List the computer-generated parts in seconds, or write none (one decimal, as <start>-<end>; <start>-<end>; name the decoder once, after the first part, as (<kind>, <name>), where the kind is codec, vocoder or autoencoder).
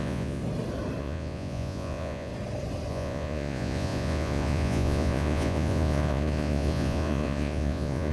0.0-0.4 (vocoder, Vocos); 1.0-2.3; 2.9-8.1